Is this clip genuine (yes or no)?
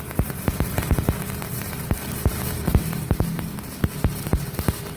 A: no